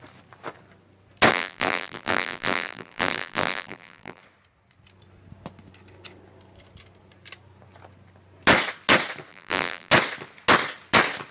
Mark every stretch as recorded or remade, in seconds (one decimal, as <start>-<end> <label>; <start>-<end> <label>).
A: 0.0-1.3 recorded; 1.3-4.2 remade; 4.2-9.3 recorded; 9.3-9.9 remade; 9.9-11.3 recorded